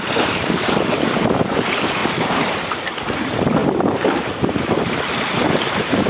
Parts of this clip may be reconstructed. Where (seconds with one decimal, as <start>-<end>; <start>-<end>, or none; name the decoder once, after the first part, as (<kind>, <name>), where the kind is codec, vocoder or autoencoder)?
2.0-2.8 (vocoder, BigVGAN v2)